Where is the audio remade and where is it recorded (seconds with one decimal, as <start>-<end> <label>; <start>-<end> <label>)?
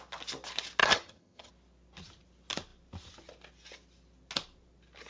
0.0-0.8 recorded; 0.8-1.5 remade; 1.5-5.1 recorded